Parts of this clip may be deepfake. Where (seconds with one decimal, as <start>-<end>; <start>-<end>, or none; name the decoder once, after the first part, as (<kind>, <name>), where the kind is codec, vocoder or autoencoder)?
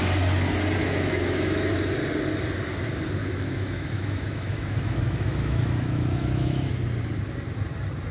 0.8-1.7 (autoencoder, DAC-VAE); 3.2-6.7